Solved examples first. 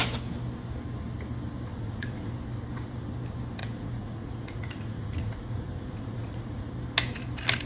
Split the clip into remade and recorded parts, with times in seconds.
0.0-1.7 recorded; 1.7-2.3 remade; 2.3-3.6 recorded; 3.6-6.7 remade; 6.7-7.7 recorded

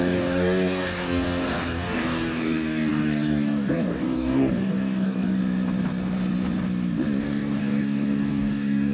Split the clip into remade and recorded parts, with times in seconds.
0.0-5.4 remade; 5.4-7.2 recorded; 7.2-8.9 remade

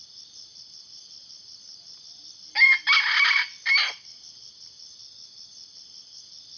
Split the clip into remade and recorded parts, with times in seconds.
0.0-6.6 remade

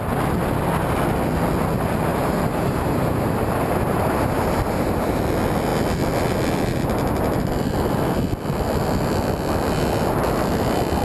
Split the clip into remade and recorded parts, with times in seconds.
0.0-2.1 recorded; 2.1-5.2 remade; 5.2-11.0 recorded